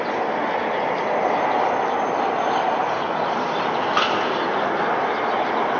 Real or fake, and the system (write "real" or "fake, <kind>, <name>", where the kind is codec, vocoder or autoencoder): real